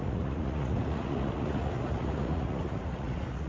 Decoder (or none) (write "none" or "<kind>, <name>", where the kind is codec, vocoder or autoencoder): vocoder, Vocos